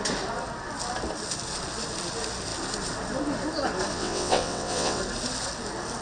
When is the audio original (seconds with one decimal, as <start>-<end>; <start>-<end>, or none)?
0.0-3.9; 5.0-6.0

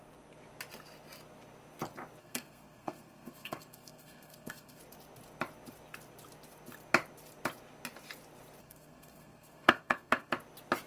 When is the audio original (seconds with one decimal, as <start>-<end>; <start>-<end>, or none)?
0.0-2.2; 4.8-8.6; 10.3-10.9

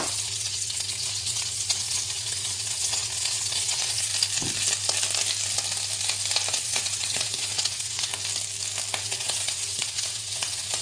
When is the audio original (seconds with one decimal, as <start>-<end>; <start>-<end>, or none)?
4.1-6.5; 8.1-9.0